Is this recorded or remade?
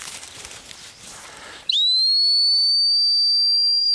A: recorded